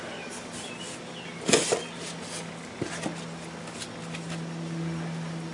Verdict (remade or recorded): recorded